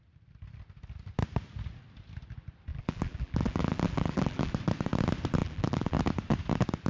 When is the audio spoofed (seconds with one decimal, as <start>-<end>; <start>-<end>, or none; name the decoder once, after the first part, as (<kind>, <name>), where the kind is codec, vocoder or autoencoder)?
2.7-4.5 (vocoder, BigVGAN v2); 5.4-6.0